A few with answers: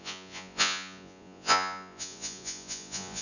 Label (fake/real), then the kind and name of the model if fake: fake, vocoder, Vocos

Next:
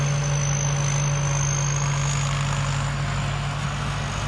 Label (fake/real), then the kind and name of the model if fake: real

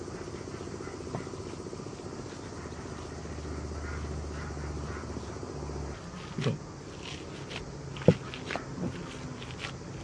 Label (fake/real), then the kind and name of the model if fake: real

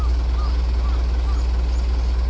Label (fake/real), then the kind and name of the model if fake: real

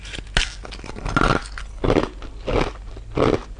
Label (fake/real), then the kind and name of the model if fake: real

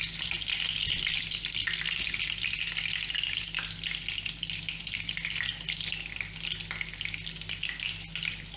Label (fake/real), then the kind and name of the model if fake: real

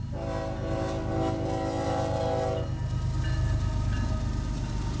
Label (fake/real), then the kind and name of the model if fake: real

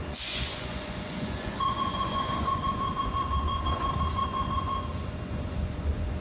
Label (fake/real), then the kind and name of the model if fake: fake, vocoder, Vocos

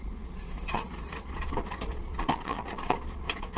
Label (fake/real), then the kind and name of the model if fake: fake, vocoder, Vocos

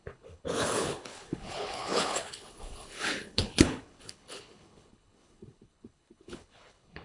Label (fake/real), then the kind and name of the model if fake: fake, codec, HILCodec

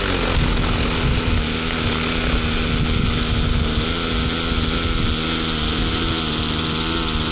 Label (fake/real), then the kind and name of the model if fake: real